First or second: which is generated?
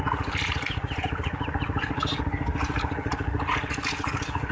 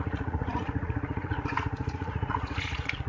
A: second